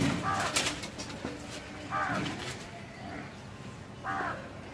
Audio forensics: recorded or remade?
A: recorded